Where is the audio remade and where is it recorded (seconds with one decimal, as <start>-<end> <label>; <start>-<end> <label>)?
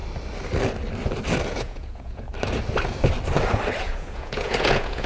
0.0-1.5 recorded; 1.5-2.3 remade; 2.3-3.8 recorded; 3.8-5.1 remade